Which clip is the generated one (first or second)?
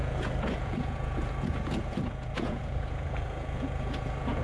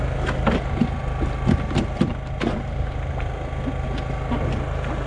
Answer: first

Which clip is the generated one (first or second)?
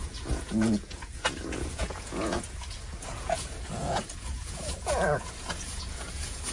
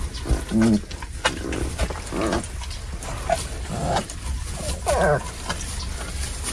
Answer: first